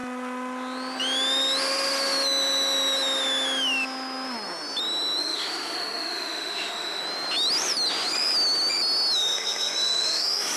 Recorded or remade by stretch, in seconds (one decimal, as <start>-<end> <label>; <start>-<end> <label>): 0.0-5.2 recorded; 5.2-7.0 remade; 7.0-9.2 recorded; 9.2-10.6 remade